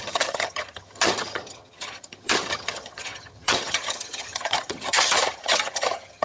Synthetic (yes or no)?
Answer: yes